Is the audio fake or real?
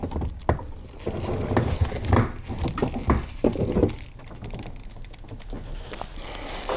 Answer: real